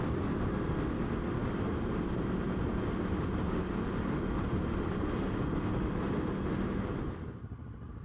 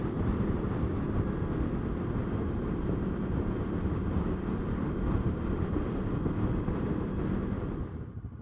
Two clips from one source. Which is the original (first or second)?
first